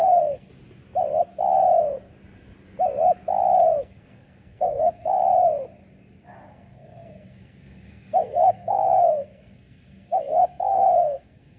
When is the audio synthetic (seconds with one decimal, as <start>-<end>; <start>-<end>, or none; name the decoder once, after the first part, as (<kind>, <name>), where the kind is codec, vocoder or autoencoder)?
0.0-0.5 (codec, SNAC); 3.8-5.2; 6.5-11.6